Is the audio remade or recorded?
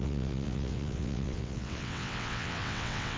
remade